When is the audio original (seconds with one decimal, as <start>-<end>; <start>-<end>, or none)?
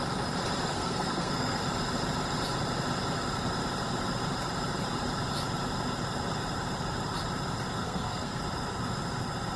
0.0-0.7; 1.6-7.8; 8.4-9.6